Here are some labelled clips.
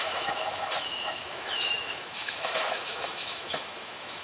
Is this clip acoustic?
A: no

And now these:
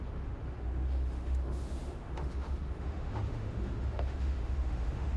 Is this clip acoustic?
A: no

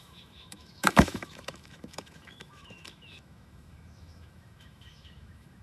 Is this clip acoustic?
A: no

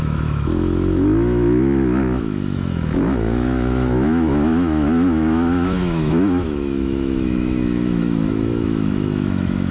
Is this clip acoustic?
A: no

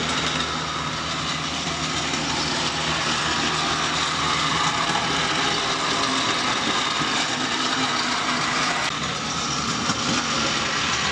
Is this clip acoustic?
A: yes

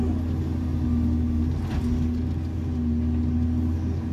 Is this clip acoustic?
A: yes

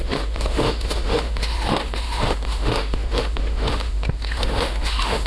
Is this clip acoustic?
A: no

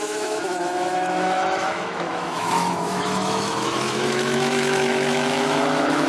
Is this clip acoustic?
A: no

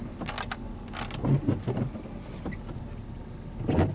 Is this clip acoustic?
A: yes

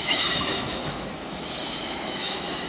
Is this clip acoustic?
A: no